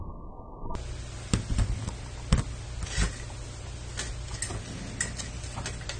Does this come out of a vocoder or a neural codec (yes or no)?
no